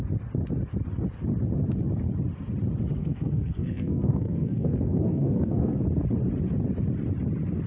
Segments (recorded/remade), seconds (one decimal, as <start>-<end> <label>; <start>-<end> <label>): 0.0-3.0 recorded; 3.0-5.8 remade; 5.8-7.7 recorded

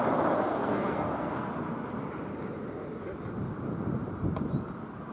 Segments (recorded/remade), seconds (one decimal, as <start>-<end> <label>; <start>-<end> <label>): 0.0-0.5 recorded; 0.5-1.5 remade; 1.5-5.1 recorded

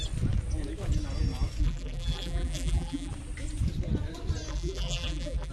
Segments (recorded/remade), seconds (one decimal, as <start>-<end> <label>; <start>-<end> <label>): 0.0-1.6 recorded; 1.6-3.1 remade; 3.1-4.5 recorded; 4.5-5.5 remade

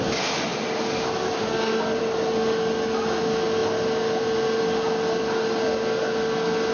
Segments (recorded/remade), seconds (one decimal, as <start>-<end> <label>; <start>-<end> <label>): 0.0-6.7 recorded

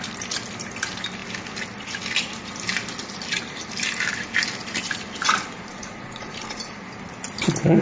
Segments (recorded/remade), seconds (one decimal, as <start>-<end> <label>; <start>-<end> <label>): 0.0-5.7 recorded; 5.7-6.7 remade; 6.7-7.8 recorded

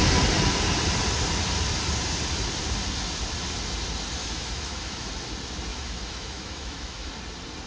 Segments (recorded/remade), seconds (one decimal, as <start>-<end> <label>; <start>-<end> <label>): 0.0-4.2 recorded; 4.2-5.1 remade; 5.1-5.7 recorded; 5.7-7.1 remade; 7.1-7.7 recorded